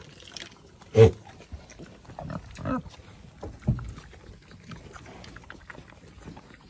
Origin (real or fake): real